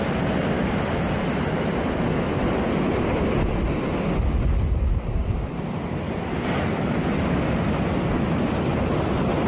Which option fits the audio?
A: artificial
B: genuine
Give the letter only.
B